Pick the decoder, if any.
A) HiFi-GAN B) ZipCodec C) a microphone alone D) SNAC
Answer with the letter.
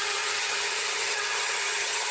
A